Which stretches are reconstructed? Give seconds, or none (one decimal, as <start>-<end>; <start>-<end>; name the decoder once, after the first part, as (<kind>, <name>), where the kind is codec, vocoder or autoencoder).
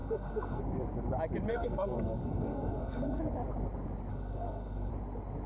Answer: 0.0-0.6 (codec, SNAC); 1.5-3.2; 4.1-4.9